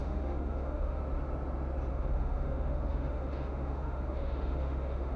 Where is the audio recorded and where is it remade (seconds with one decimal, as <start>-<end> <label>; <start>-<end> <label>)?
0.0-1.0 remade; 1.0-1.9 recorded; 1.9-5.2 remade